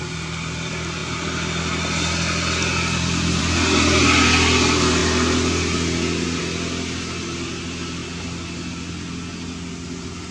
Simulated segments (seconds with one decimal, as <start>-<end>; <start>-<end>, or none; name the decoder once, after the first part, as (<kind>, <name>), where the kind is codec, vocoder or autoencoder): none